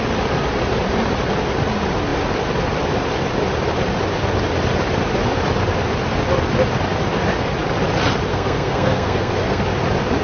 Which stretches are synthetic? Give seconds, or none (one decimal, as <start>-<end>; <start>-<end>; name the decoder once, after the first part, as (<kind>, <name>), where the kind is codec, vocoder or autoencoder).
8.3-9.6 (codec, SNAC)